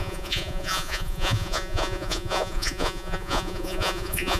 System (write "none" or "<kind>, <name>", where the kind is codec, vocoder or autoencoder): vocoder, Vocos